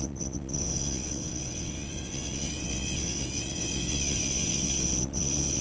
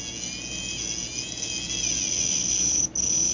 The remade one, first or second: first